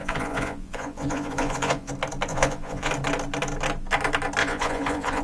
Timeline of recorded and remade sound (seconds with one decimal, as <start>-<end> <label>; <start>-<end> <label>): 0.0-1.9 remade; 1.9-2.3 recorded; 2.3-2.9 remade; 2.9-4.4 recorded; 4.4-5.2 remade